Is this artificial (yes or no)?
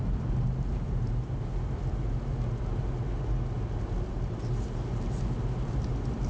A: no